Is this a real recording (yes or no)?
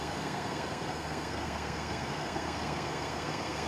no